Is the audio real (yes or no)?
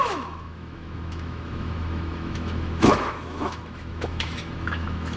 no